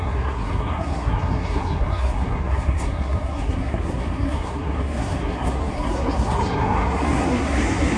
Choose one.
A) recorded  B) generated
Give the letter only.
B